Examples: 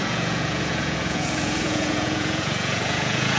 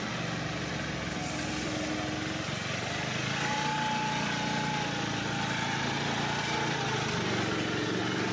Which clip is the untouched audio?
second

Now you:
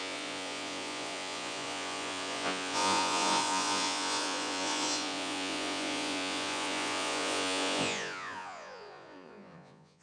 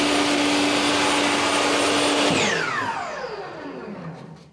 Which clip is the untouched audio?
second